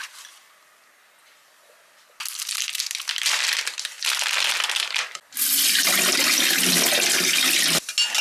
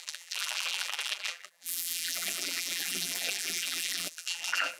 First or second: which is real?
first